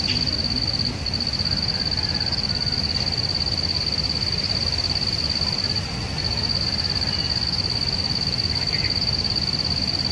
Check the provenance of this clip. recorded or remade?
recorded